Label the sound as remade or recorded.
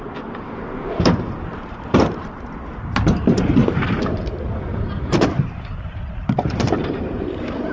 remade